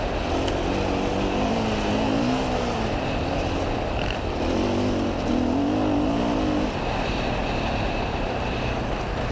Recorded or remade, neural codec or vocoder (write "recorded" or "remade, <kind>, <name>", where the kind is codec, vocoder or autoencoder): recorded